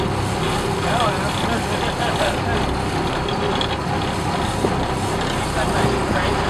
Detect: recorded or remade recorded